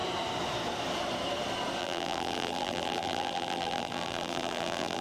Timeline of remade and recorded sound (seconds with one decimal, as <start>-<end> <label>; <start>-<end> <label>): 0.0-1.8 recorded; 1.8-5.0 remade